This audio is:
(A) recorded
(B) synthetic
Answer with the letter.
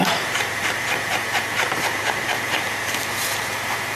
B